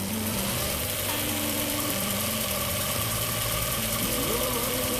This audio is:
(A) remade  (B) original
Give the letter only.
A